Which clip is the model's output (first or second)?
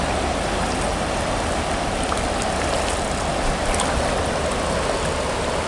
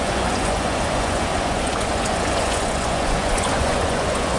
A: second